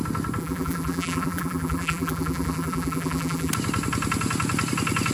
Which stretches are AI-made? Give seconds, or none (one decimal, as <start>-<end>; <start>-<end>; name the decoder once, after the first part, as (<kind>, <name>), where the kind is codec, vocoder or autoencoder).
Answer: 0.4-3.5 (vocoder, BigVGAN v2)